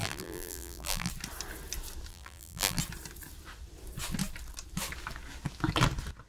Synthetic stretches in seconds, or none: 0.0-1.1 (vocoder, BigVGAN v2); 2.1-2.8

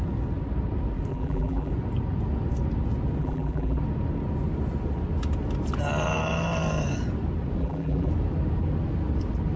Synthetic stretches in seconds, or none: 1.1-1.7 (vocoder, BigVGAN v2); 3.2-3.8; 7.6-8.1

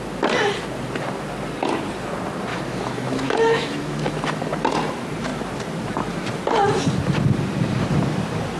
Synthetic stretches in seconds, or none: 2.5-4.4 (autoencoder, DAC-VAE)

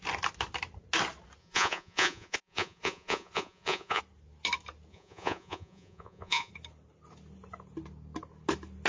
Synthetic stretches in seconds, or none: 1.4-4.0 (vocoder, Vocos); 4.9-6.5